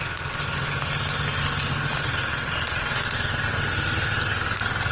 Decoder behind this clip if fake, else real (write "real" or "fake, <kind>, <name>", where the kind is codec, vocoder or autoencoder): real